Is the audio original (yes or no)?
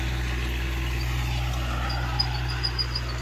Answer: yes